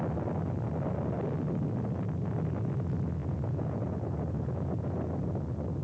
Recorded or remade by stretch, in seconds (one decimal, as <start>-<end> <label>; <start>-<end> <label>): 0.0-3.2 recorded; 3.2-5.1 remade; 5.1-5.8 recorded